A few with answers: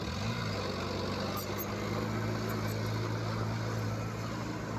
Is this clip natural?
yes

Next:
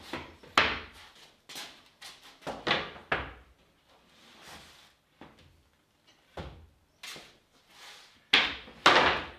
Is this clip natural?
yes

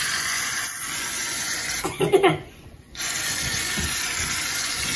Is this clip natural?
no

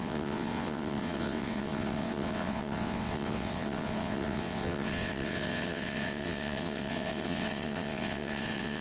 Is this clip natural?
no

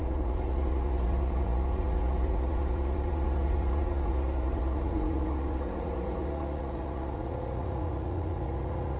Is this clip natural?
no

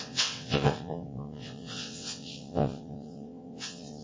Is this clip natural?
no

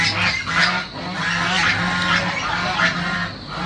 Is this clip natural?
yes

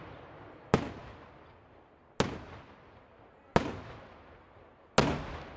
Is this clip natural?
yes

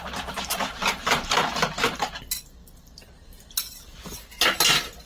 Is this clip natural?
yes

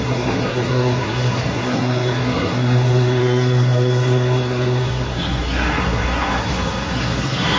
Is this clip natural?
no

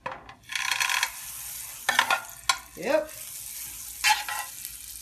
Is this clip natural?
yes